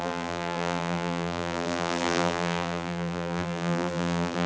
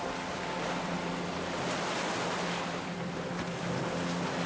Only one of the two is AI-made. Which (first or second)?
first